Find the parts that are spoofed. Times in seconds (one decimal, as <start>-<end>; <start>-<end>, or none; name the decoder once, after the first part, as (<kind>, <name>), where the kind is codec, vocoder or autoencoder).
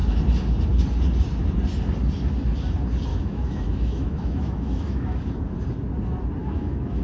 3.1-5.2 (autoencoder, DAC-VAE); 6.4-7.0